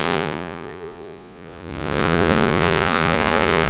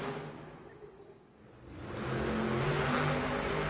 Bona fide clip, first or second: second